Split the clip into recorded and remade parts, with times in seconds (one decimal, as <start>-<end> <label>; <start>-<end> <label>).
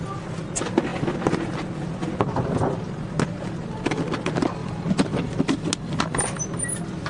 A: 0.0-7.1 recorded